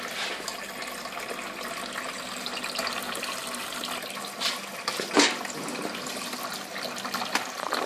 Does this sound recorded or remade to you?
recorded